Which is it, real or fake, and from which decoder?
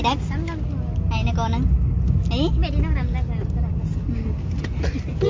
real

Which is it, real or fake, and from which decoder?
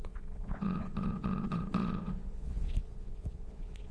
fake, vocoder, Vocos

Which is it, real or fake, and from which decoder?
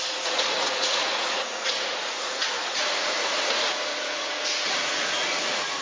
fake, vocoder, Vocos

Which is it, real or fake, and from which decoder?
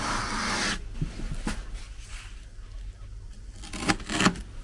real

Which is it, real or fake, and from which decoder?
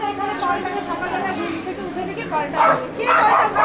real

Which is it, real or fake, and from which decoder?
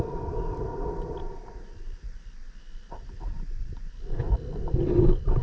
real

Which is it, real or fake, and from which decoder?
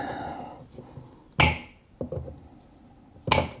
real